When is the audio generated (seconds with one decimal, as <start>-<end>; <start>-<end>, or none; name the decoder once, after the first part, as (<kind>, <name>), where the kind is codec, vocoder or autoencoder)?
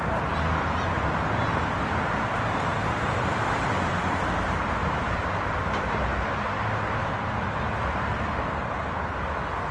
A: 2.7-3.5 (vocoder, BigVGAN v2); 4.8-6.0; 7.0-7.6